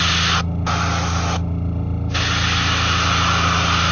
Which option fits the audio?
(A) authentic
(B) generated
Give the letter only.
A